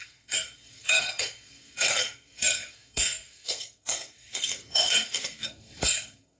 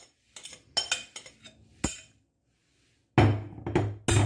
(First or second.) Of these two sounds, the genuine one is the second